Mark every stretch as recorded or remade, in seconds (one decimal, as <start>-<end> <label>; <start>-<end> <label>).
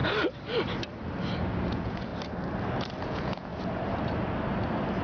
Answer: 0.0-1.7 recorded; 1.7-2.1 remade; 2.1-3.0 recorded; 3.0-3.5 remade; 3.5-5.0 recorded